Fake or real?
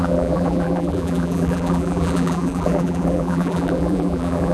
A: fake